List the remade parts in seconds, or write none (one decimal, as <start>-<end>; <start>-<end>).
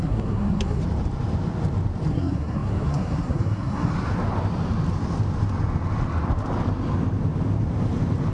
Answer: 0.0-0.8; 2.1-3.9